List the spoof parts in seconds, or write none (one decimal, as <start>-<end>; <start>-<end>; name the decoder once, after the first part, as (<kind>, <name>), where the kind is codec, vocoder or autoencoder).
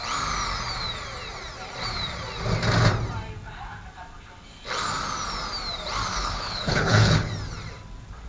6.1-7.3 (codec, HILCodec)